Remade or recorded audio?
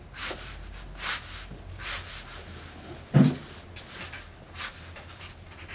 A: recorded